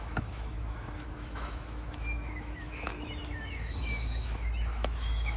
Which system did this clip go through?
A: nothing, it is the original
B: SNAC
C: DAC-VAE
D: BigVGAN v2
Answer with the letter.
C